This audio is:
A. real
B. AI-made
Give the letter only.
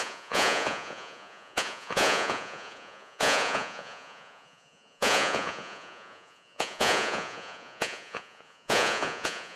B